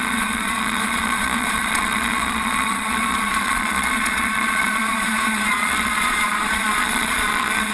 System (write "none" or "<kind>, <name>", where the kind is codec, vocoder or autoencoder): vocoder, Vocos